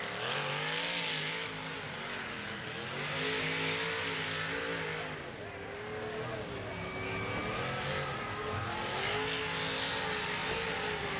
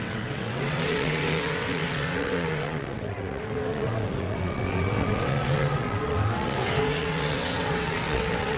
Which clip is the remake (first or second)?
second